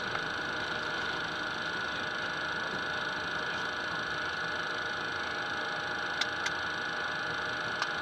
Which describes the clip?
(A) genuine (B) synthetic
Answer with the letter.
A